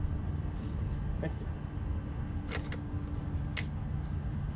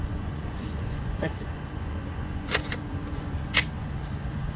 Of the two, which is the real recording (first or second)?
first